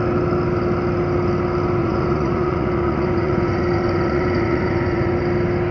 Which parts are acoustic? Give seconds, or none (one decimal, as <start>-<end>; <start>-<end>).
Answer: 0.0-1.8; 5.2-5.7